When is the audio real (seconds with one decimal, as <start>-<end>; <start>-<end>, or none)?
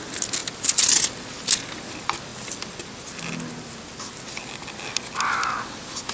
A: 0.0-6.1